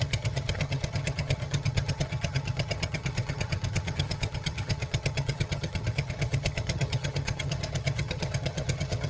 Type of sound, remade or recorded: remade